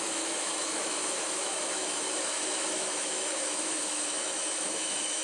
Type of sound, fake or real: fake